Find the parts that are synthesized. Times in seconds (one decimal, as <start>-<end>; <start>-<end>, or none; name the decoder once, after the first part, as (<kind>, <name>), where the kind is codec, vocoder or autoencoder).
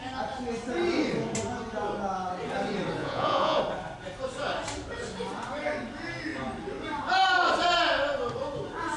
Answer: 3.0-3.6 (vocoder, Vocos)